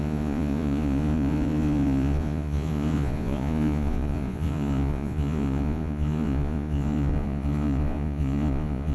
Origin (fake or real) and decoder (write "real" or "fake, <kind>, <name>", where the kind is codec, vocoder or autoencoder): fake, vocoder, Vocos